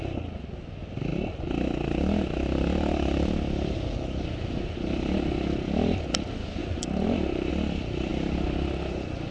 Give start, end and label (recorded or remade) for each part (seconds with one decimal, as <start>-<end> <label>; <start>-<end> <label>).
0.0-6.6 recorded; 6.6-7.5 remade; 7.5-9.3 recorded